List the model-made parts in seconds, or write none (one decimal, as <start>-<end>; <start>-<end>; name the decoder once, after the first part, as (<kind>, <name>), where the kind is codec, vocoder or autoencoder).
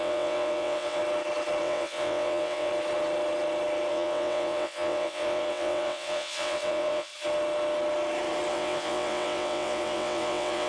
0.0-1.0 (vocoder, WaveNeXt); 1.6-2.7; 3.9-7.1; 8.5-10.7